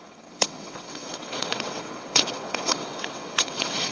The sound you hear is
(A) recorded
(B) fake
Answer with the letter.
B